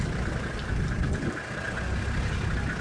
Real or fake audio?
real